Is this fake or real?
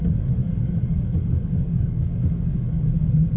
fake